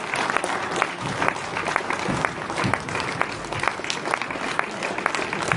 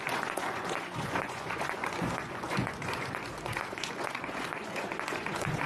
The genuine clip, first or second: first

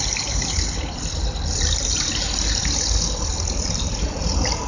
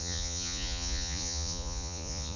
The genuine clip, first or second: first